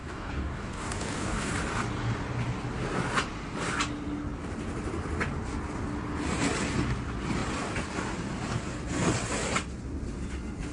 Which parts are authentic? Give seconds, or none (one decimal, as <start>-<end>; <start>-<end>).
1.5-10.7